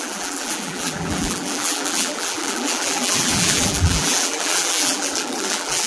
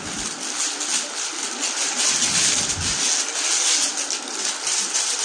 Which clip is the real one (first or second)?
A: second